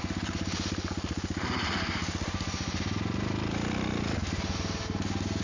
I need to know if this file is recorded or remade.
recorded